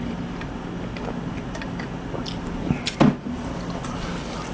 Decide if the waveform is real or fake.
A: real